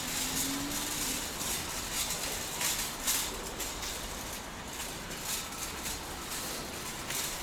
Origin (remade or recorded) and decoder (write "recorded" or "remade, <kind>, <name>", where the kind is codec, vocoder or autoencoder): recorded